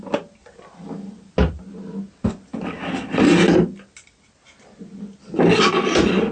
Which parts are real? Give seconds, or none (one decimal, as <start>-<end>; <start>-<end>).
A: 0.0-6.3